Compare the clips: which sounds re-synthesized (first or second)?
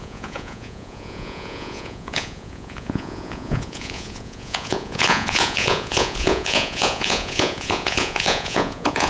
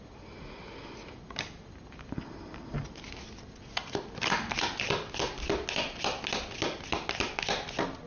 first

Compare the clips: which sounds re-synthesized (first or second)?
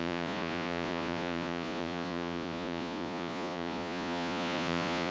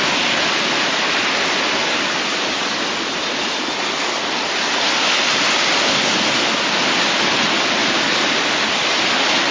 first